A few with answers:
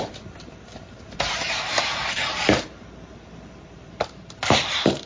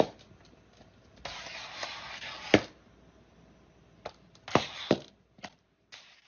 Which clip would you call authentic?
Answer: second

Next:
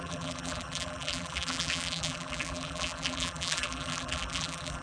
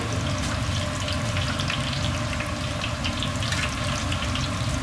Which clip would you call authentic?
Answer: second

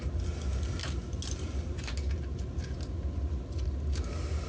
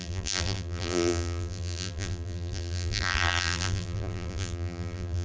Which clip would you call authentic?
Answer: first